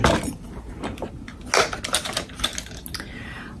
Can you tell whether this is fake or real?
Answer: real